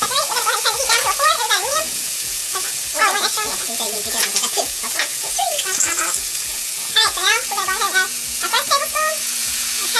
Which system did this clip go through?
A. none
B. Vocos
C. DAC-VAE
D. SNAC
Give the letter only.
B